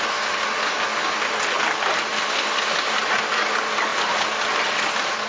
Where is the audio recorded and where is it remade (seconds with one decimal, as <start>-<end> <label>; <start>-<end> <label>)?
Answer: 0.0-5.3 recorded